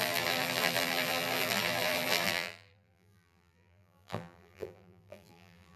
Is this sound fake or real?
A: fake